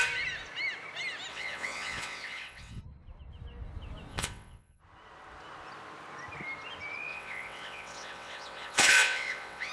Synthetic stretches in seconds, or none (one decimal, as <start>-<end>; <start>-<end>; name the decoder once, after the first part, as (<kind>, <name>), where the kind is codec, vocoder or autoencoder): 1.3-2.8 (vocoder, WaveNeXt); 4.1-4.8; 7.1-9.7